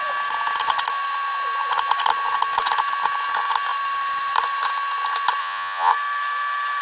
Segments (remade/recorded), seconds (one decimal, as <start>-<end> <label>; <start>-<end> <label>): 0.0-5.4 recorded; 5.4-5.9 remade; 5.9-6.8 recorded